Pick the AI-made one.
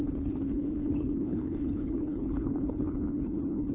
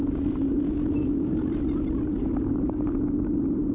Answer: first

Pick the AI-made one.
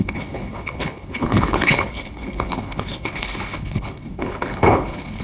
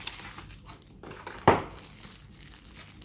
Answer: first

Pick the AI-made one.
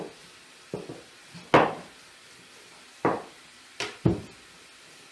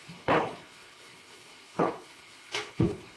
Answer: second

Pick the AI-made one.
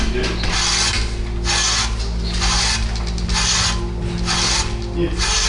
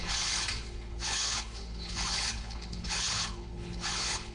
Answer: second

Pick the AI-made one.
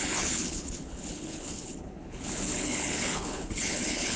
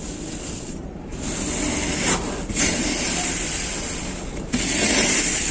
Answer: first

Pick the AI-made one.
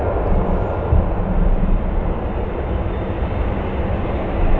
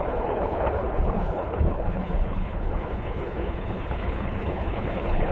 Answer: second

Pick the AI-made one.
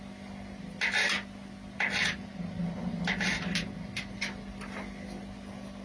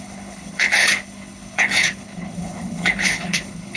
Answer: second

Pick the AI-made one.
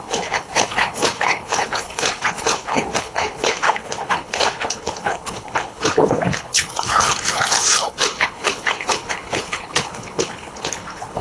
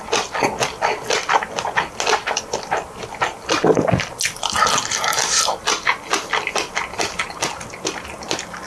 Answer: first